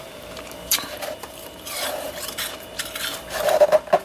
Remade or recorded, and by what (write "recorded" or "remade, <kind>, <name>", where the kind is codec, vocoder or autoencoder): remade, vocoder, BigVGAN v2